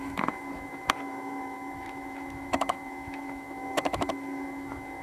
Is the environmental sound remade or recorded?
remade